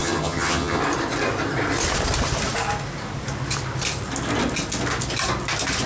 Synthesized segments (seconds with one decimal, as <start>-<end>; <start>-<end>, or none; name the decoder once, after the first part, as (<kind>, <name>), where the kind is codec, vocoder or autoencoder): 0.0-0.8 (vocoder, HiFi-GAN)